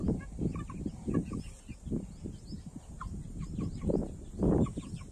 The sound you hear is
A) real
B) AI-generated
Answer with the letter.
A